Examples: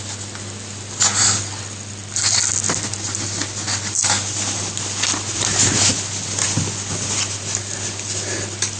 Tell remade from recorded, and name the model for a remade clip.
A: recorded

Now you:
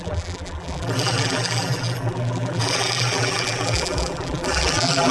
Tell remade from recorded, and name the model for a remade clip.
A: remade, vocoder, BigVGAN v2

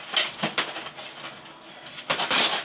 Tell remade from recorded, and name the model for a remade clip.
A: recorded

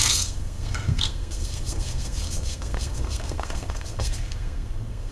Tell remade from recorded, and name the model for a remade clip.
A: remade, codec, SNAC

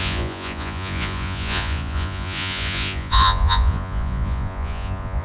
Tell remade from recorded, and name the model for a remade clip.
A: remade, vocoder, Vocos